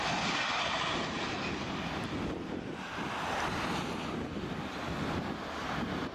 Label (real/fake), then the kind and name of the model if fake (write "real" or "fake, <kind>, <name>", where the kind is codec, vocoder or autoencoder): real